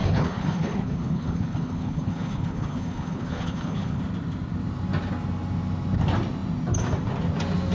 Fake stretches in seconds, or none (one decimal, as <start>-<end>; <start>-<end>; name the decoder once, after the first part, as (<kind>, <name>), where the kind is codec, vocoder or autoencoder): 0.0-4.0 (codec, HILCodec)

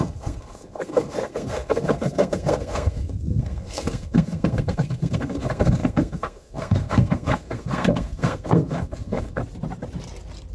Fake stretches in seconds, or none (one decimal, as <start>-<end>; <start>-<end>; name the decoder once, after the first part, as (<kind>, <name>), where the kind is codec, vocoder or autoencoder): 0.0-9.4 (codec, SNAC)

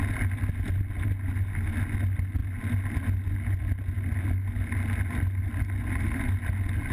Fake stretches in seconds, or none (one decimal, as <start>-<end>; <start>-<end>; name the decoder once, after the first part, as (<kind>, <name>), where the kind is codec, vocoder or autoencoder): none

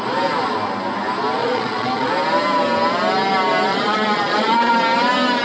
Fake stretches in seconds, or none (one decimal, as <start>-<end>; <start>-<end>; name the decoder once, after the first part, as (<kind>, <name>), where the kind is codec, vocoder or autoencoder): 1.4-2.1 (vocoder, Vocos); 3.7-4.7